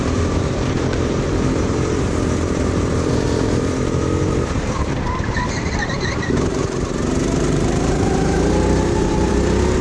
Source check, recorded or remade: remade